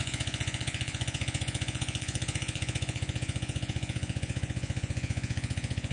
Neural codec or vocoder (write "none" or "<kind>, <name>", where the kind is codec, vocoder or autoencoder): vocoder, Vocos